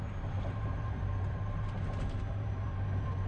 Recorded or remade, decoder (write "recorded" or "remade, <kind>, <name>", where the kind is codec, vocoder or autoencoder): remade, vocoder, BigVGAN v2